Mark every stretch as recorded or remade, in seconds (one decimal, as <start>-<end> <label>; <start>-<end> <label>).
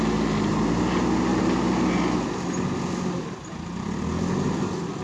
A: 0.0-5.0 recorded